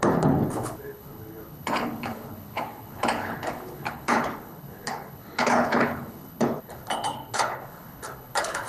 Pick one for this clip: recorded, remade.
remade